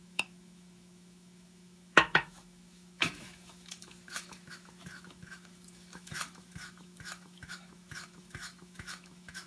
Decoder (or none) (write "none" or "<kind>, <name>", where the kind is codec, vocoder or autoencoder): autoencoder, DAC-VAE